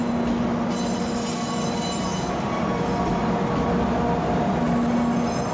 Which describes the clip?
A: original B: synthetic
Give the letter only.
A